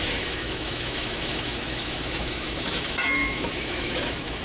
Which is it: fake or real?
fake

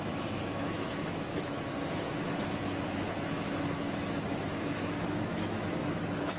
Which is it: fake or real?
fake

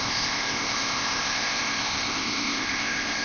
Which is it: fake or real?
fake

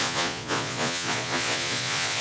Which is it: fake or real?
fake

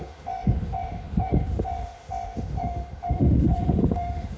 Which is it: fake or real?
fake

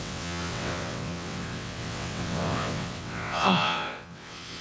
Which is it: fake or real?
fake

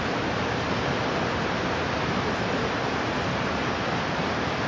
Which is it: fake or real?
real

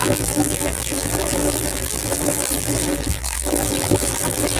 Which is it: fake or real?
fake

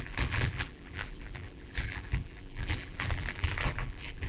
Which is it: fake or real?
fake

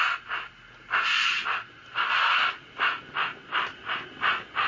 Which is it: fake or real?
real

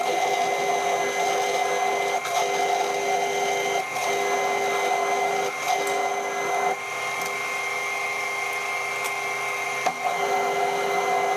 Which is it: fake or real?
real